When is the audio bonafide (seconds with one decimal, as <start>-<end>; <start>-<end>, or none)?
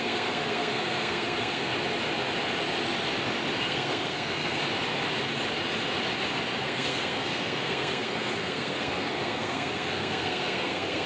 1.7-3.6; 4.6-6.6